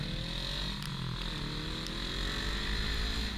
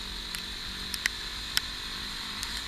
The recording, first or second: first